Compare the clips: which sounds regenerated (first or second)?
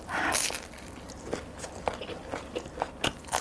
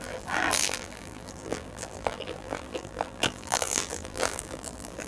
second